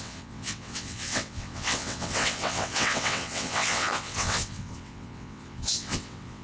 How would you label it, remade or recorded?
remade